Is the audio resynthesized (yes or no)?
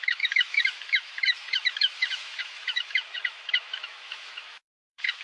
yes